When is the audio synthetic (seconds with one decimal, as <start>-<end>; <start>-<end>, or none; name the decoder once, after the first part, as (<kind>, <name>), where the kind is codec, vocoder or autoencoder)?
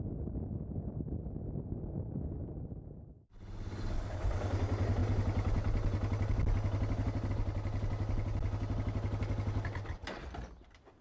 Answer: none